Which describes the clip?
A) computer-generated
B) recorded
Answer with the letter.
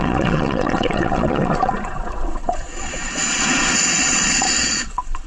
A